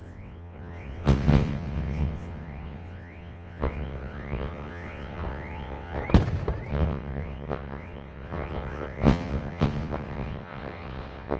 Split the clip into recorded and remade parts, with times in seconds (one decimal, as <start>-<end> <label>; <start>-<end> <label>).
0.0-6.0 remade; 6.0-6.7 recorded; 6.7-11.4 remade